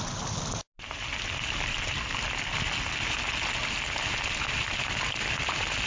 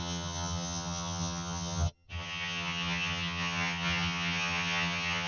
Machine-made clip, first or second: second